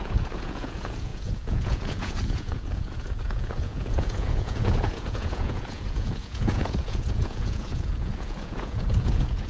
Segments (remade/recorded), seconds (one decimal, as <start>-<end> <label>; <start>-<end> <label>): 0.0-9.5 remade